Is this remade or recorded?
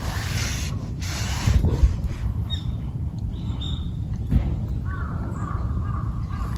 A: remade